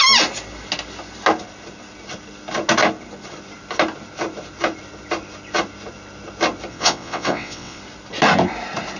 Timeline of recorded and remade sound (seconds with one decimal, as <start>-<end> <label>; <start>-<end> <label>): 0.0-6.7 recorded; 6.7-7.8 remade; 7.8-9.0 recorded